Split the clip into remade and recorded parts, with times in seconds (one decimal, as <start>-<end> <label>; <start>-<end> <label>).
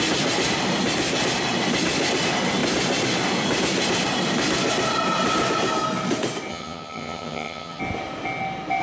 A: 0.0-6.5 recorded; 6.5-7.8 remade; 7.8-8.8 recorded